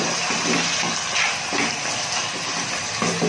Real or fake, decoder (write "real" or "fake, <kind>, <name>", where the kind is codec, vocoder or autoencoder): real